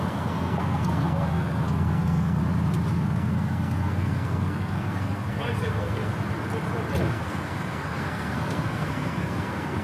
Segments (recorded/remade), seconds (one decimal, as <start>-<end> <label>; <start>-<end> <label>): 0.0-2.4 remade; 2.4-2.9 recorded; 2.9-6.1 remade; 6.1-7.1 recorded; 7.1-9.8 remade